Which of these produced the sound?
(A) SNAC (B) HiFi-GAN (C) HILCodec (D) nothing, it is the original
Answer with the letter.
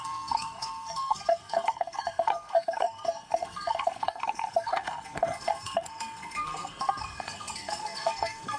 A